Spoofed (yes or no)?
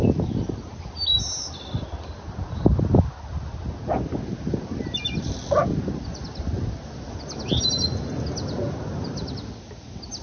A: no